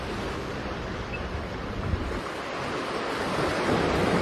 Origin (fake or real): real